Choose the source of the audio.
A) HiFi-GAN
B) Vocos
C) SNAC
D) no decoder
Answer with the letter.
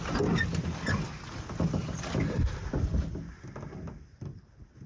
D